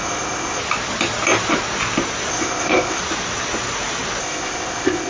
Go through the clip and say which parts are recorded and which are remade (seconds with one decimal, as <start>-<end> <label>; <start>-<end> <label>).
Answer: 0.0-0.6 remade; 0.6-2.3 recorded; 2.3-3.0 remade; 3.0-4.2 recorded; 4.2-5.1 remade